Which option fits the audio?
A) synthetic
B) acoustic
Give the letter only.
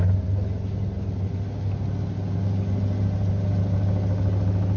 B